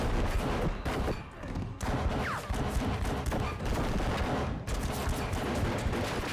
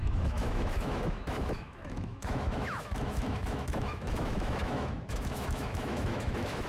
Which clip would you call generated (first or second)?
second